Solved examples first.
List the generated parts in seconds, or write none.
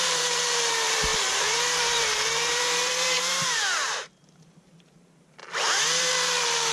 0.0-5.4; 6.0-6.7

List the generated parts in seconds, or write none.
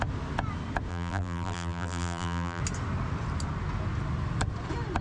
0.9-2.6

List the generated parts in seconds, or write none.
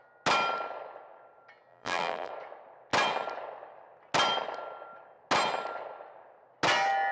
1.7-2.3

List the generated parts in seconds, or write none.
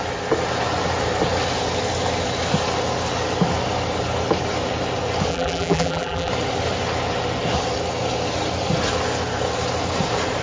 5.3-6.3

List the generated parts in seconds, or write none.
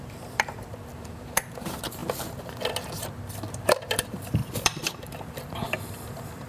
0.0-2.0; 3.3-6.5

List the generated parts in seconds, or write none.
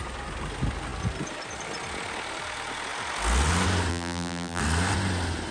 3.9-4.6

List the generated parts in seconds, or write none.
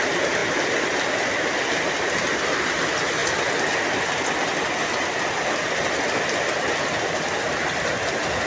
none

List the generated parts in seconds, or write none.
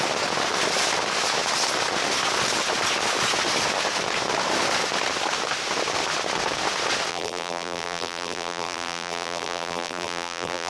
7.1-10.7